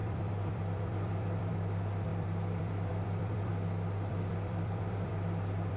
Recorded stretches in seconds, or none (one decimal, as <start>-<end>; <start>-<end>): 3.5-4.1